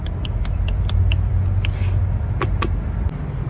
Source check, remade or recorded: recorded